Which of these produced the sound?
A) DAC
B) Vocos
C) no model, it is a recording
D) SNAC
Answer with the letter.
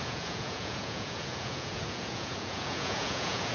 B